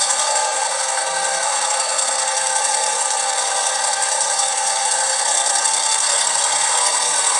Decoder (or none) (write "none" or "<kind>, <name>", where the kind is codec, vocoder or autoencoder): codec, SNAC